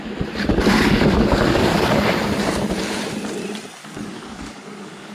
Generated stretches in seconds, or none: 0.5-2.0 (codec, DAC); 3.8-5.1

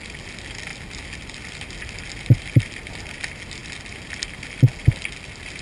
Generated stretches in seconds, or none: none

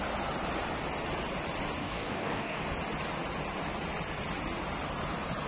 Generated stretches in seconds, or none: 1.8-2.6 (codec, DAC)

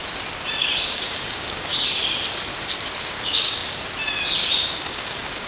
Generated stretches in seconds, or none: 0.6-1.7 (codec, DAC); 3.0-3.6; 4.7-5.5

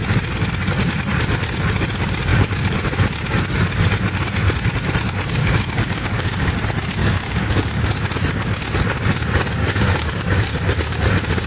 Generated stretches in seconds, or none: 5.4-6.5 (codec, DAC); 7.0-7.9; 9.6-10.4

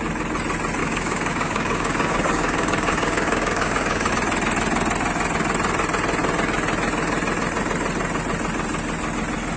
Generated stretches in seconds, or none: 0.8-4.1 (codec, DAC)

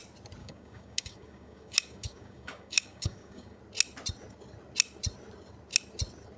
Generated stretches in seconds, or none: 0.4-3.6 (codec, DAC)